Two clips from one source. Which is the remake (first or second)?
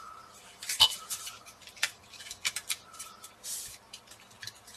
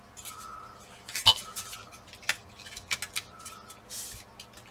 first